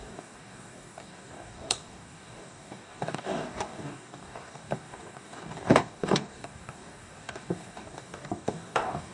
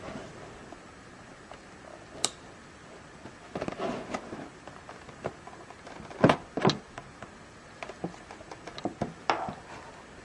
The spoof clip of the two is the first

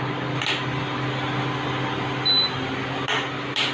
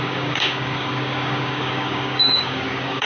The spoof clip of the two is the second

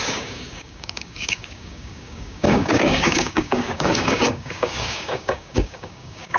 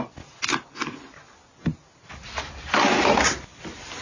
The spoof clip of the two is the first